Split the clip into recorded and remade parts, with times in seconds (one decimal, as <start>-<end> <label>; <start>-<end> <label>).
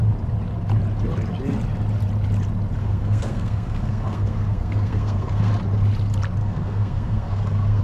0.0-2.8 recorded; 2.8-5.5 remade; 5.5-6.4 recorded; 6.4-7.8 remade